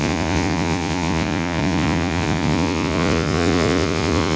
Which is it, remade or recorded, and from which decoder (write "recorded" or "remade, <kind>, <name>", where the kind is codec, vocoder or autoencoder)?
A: remade, vocoder, Vocos